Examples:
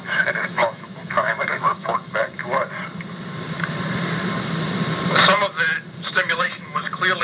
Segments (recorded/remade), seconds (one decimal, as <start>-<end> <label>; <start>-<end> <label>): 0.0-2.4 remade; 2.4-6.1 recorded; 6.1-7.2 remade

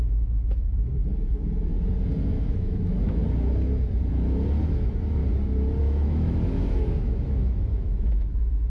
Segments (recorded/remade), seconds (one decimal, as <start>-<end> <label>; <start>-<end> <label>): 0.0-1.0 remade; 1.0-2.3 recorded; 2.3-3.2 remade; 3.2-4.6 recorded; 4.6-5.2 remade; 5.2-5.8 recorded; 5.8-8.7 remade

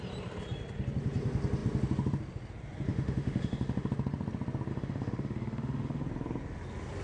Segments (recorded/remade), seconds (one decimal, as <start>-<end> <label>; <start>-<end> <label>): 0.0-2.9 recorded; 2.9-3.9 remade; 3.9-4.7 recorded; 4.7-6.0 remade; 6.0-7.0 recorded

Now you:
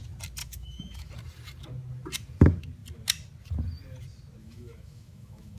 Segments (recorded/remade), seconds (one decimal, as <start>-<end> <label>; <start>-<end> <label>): 0.0-0.4 recorded; 0.4-1.1 remade; 1.1-4.4 recorded; 4.4-5.6 remade

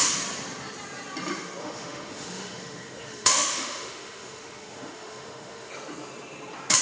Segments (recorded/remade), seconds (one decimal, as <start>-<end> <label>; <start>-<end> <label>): 0.0-1.6 recorded; 1.6-5.7 remade; 5.7-6.8 recorded

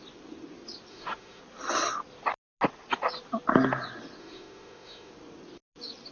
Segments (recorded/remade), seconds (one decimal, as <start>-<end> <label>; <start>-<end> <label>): 0.0-0.9 recorded; 0.9-1.4 remade; 1.4-4.2 recorded; 4.2-5.1 remade; 5.1-6.1 recorded

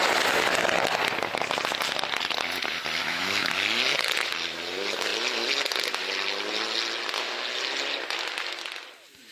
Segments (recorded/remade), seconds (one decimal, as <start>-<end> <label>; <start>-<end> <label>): 0.0-3.0 recorded; 3.0-3.5 remade; 3.5-9.3 recorded

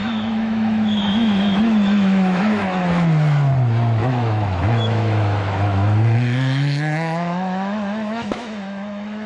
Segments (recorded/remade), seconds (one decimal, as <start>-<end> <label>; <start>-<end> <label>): 0.0-2.8 remade; 2.8-4.0 recorded; 4.0-9.3 remade